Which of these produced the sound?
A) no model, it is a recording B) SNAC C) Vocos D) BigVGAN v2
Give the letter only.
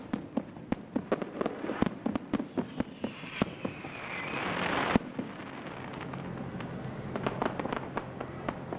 D